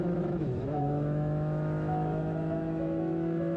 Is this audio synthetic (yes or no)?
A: yes